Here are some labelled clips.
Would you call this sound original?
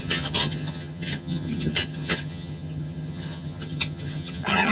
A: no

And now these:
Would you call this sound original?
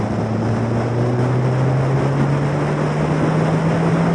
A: yes